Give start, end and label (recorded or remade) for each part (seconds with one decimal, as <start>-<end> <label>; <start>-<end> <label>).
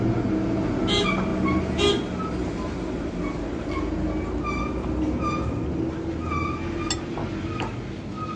0.0-8.4 recorded